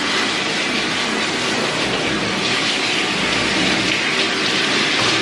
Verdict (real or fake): real